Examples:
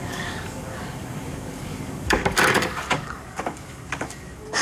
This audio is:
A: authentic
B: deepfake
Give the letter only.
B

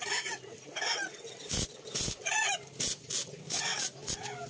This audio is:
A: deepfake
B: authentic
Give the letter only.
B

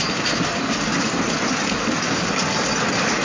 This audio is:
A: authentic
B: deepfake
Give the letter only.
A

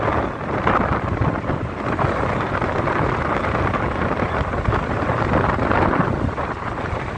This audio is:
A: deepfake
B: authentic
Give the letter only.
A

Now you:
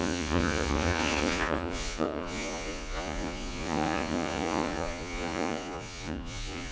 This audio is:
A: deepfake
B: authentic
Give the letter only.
A